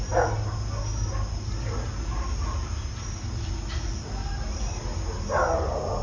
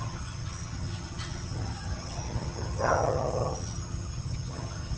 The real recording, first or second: first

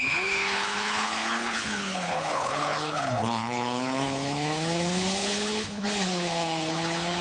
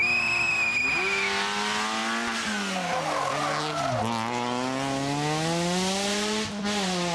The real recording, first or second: second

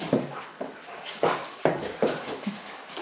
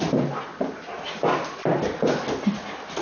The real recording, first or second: second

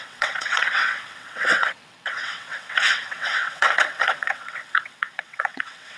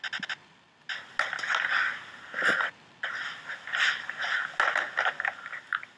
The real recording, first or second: second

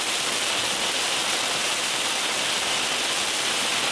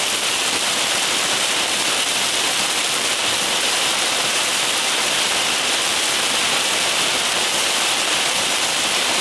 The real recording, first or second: first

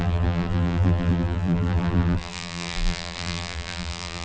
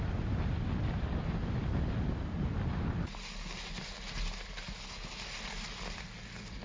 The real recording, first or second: second